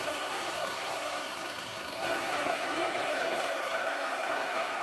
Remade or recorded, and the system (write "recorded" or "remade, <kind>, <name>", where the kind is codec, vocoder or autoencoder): remade, codec, SNAC